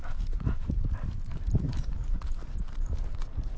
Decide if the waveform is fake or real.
fake